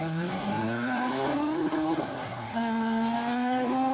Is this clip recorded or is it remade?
remade